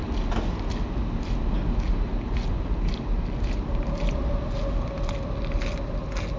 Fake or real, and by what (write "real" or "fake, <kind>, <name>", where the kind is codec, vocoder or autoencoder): real